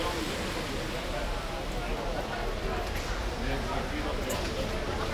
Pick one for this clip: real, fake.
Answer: real